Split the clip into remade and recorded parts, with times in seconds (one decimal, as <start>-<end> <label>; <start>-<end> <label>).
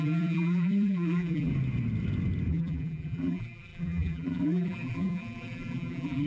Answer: 0.0-1.5 remade; 1.5-2.5 recorded; 2.5-6.3 remade